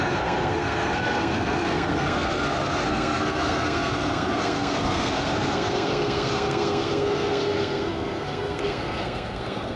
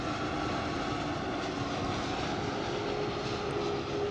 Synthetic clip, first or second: first